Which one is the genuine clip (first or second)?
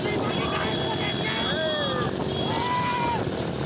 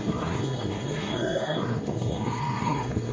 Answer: first